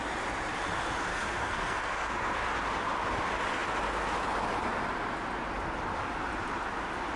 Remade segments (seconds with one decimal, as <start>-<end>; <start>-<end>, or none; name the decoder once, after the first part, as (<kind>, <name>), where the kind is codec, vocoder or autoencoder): 1.1-2.5 (codec, SNAC)